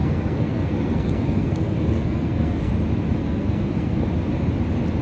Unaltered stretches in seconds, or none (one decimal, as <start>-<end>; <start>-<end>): 2.7-3.2; 4.0-5.0